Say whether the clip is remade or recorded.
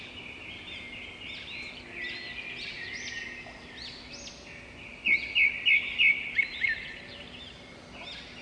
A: recorded